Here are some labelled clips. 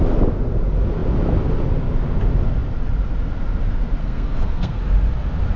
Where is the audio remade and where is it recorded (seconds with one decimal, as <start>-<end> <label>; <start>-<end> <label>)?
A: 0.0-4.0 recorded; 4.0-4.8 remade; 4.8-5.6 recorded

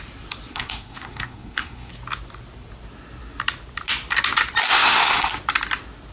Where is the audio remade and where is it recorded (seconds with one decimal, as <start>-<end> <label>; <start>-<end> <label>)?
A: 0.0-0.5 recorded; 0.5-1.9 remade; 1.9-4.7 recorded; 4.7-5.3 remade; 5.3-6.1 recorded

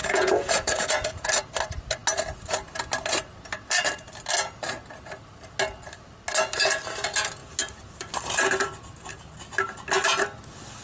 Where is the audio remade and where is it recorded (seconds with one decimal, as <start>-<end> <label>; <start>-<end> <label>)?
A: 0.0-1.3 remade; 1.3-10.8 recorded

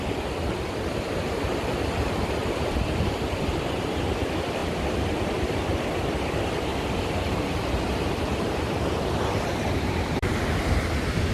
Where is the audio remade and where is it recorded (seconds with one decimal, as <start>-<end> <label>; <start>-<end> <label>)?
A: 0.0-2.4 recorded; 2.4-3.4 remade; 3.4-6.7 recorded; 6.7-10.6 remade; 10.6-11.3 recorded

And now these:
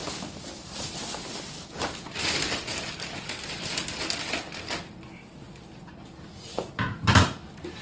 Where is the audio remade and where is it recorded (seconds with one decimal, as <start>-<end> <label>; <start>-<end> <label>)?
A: 0.0-7.8 recorded

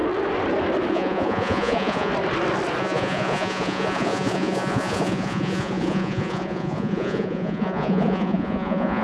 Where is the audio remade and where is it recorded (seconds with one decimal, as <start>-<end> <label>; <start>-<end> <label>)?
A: 0.0-0.9 recorded; 0.9-2.1 remade; 2.1-2.8 recorded; 2.8-9.0 remade

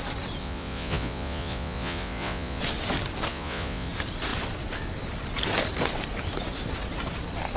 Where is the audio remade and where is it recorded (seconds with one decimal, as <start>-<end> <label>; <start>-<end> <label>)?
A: 0.0-0.4 recorded; 0.4-2.6 remade; 2.6-3.3 recorded; 3.3-3.9 remade; 3.9-7.6 recorded

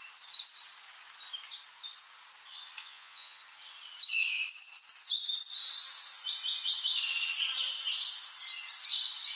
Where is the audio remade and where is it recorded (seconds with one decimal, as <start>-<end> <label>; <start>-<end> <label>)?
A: 0.0-2.8 recorded; 2.8-3.4 remade; 3.4-9.4 recorded